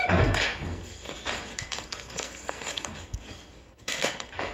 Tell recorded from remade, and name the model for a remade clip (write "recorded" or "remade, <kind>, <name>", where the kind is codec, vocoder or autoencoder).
remade, codec, SNAC